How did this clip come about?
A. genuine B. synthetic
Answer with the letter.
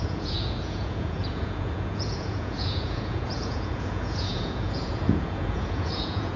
B